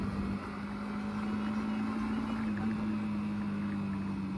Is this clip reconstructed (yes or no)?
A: no